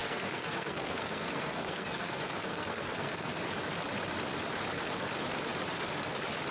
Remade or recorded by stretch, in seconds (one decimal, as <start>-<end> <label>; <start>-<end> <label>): 0.0-3.5 remade; 3.5-6.5 recorded